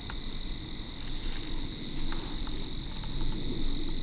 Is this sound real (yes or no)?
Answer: yes